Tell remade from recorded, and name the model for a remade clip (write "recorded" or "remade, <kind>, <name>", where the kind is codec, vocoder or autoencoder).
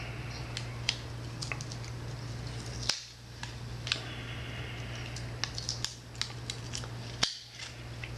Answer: recorded